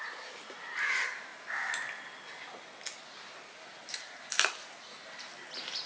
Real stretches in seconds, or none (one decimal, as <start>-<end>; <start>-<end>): 1.3-3.9